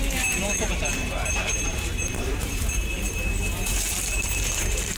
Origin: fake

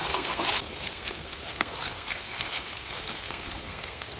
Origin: fake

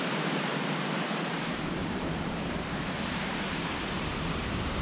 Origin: fake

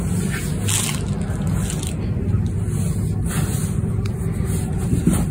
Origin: real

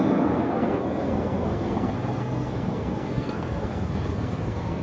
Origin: fake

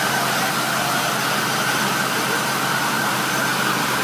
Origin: real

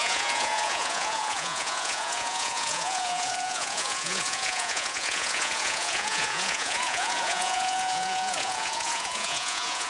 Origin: fake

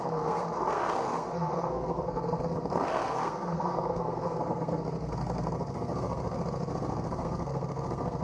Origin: fake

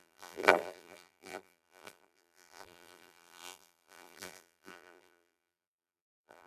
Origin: fake